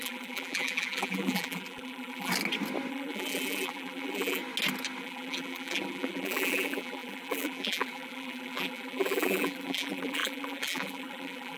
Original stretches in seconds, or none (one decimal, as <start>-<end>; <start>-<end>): 2.3-2.9; 4.4-5.0